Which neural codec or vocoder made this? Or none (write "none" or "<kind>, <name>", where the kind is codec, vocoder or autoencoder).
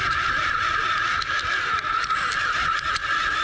none